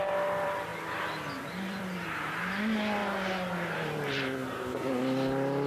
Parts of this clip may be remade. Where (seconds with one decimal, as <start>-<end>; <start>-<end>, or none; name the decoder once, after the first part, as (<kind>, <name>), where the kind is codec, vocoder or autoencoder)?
0.0-0.7 (vocoder, BigVGAN v2); 1.4-3.0; 3.7-4.4